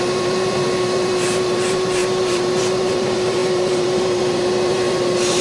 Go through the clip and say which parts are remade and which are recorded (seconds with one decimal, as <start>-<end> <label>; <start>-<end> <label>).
0.0-5.4 remade